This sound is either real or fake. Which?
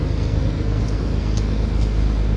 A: fake